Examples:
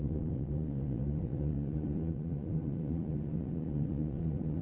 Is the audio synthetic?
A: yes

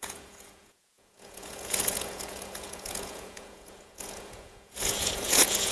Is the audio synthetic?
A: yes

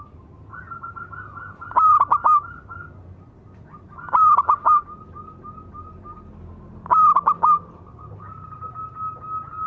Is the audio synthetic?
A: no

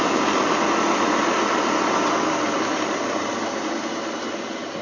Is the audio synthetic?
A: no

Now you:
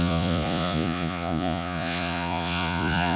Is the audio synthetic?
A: yes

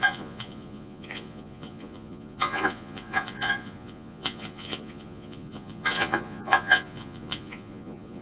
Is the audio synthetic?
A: yes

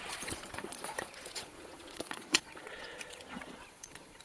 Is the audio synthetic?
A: yes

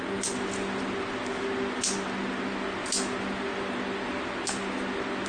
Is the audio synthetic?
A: no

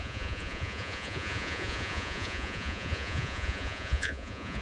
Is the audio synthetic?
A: yes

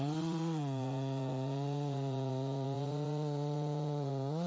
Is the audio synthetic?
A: yes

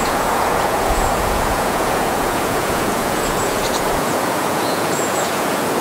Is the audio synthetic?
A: yes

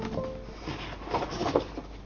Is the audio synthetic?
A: no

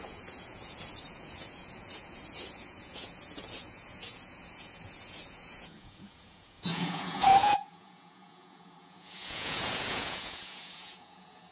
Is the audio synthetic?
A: yes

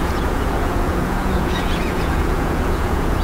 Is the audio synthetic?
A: yes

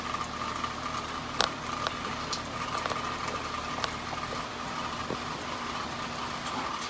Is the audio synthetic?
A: no